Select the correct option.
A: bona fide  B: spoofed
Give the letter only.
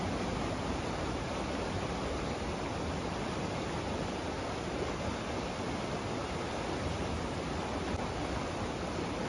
A